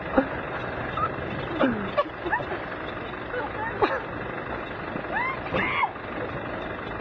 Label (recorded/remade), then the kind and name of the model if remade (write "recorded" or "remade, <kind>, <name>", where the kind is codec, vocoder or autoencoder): recorded